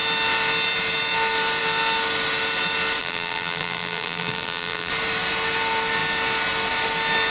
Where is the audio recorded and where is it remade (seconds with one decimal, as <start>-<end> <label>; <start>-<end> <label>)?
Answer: 0.0-3.0 recorded; 3.0-4.9 remade; 4.9-7.3 recorded